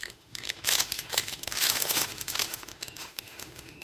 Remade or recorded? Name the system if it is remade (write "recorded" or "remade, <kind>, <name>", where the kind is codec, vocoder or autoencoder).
remade, autoencoder, DAC-VAE